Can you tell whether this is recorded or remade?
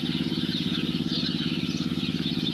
recorded